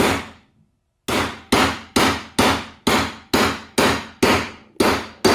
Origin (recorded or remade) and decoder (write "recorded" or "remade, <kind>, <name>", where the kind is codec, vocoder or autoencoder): recorded